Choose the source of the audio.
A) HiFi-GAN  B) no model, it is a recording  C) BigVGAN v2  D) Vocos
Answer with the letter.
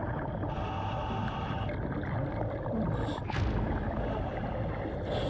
B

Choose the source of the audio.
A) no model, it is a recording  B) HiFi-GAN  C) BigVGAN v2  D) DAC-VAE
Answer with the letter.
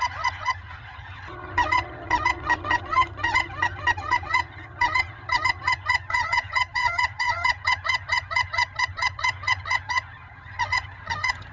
B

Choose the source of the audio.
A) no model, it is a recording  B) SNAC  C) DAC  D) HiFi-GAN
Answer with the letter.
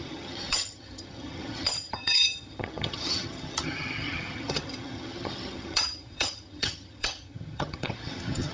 D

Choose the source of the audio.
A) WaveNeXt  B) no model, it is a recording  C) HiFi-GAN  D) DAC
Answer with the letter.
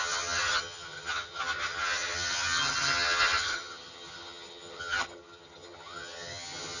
C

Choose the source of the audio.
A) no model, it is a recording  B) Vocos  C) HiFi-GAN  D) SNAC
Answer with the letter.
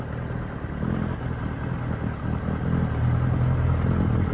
A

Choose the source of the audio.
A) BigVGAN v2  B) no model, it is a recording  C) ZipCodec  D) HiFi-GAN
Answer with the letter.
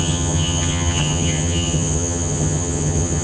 D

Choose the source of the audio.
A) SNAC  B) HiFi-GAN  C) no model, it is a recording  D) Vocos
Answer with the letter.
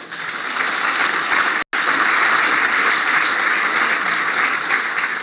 C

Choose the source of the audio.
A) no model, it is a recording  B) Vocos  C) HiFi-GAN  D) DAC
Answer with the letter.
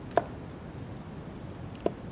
A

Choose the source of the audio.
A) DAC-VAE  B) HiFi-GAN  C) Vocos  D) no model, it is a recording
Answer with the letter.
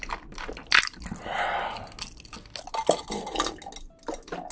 D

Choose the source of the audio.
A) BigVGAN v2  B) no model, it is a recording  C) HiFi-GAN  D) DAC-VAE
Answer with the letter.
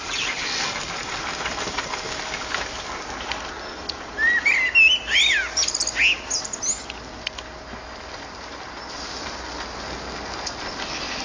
B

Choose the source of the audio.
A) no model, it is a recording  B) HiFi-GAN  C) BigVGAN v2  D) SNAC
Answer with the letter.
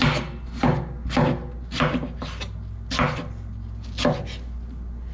A